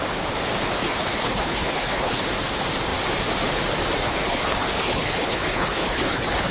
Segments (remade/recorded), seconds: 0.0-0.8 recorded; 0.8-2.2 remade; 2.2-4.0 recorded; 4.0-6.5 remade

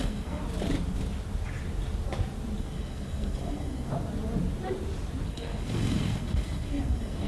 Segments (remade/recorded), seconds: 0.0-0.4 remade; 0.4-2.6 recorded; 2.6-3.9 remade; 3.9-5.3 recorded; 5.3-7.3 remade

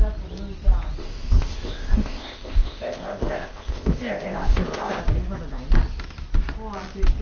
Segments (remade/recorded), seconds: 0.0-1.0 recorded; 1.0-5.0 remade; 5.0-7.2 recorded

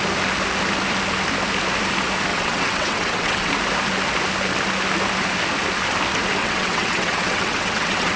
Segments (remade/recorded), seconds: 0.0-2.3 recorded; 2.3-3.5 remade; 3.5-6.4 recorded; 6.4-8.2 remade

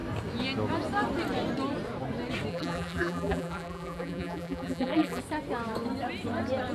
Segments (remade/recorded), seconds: 0.0-2.5 recorded; 2.5-5.2 remade; 5.2-6.7 recorded